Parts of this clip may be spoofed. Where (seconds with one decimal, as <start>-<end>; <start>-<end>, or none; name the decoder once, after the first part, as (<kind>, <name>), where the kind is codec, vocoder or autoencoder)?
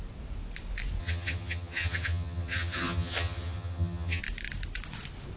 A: 1.0-4.2 (vocoder, HiFi-GAN)